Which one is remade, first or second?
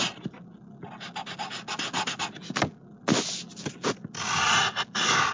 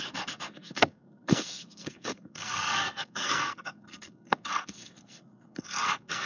second